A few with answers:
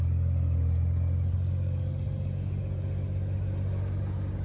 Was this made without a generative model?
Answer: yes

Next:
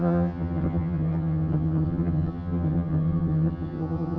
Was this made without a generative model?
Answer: no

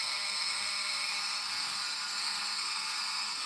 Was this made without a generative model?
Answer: no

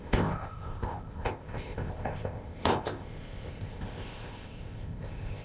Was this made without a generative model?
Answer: no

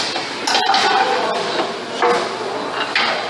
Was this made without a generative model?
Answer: yes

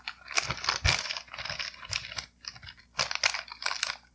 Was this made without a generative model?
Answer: yes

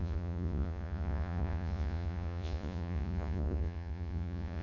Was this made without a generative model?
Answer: no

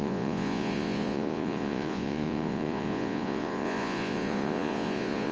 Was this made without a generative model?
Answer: no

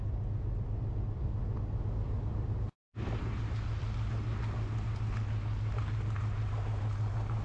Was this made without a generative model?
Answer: yes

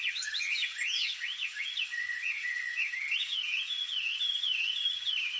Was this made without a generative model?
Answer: no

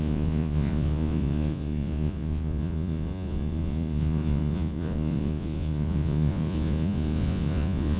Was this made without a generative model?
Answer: no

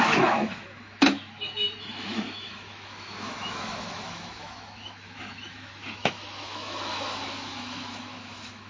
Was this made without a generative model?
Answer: no